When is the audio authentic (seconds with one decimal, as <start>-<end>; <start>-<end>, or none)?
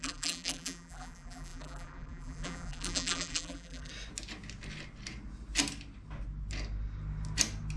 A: 3.9-7.8